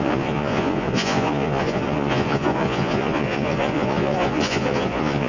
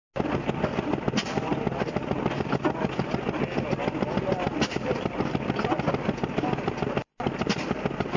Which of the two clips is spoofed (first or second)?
first